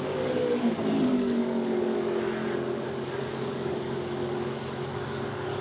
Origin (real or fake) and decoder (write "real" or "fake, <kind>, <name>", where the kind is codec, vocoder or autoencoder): fake, codec, DAC